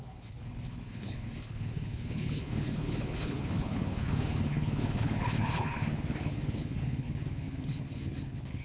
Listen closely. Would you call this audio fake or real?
fake